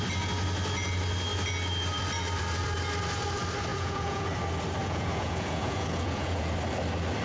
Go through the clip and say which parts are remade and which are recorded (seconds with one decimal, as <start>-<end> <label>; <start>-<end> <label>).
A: 0.0-3.7 recorded; 3.7-4.2 remade; 4.2-4.8 recorded; 4.8-6.5 remade; 6.5-7.2 recorded